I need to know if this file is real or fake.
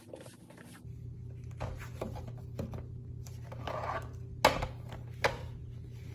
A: real